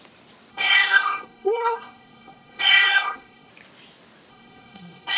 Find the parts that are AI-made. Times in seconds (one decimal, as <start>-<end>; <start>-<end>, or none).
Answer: 0.5-3.5; 4.3-5.2